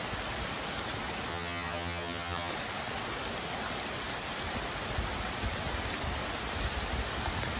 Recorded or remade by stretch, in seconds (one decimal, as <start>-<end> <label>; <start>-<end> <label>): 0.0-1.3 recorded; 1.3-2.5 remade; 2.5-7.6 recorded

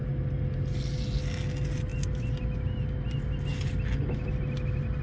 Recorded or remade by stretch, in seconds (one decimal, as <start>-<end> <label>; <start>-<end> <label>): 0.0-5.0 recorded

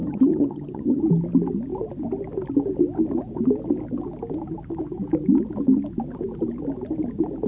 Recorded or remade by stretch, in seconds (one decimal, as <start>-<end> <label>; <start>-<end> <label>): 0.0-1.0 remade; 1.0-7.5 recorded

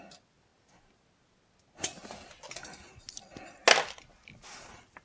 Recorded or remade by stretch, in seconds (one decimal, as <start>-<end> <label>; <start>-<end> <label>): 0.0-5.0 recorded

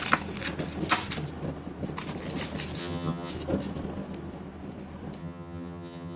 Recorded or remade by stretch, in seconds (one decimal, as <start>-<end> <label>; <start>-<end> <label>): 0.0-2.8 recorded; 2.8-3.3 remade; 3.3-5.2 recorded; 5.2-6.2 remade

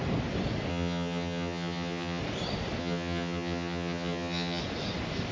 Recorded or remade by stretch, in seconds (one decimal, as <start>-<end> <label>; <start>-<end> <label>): 0.0-0.7 recorded; 0.7-2.2 remade; 2.2-2.8 recorded; 2.8-4.6 remade; 4.6-5.3 recorded

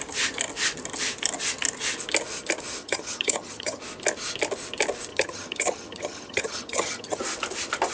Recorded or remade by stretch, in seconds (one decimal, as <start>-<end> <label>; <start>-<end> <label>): 0.0-2.8 recorded; 2.8-3.8 remade; 3.8-5.1 recorded; 5.1-7.2 remade; 7.2-7.9 recorded